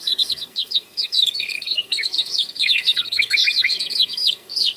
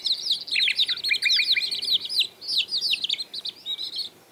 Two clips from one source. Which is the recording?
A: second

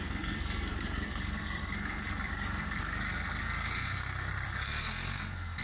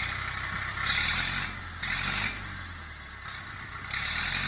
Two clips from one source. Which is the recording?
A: second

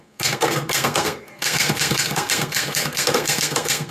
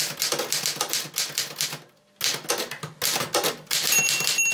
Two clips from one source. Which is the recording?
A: second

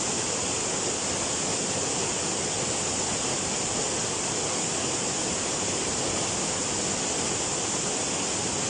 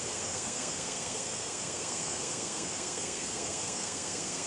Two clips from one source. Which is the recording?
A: first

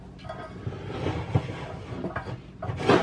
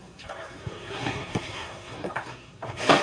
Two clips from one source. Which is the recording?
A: first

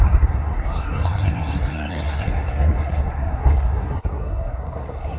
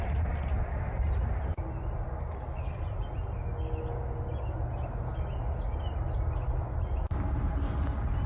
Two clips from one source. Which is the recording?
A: second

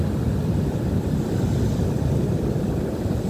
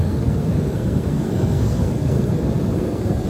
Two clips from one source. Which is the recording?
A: first